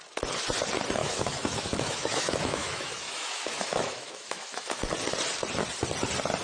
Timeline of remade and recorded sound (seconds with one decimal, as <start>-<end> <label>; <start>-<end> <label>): 0.0-1.0 recorded; 1.0-4.8 remade; 4.8-6.4 recorded